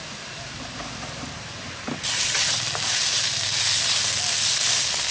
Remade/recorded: recorded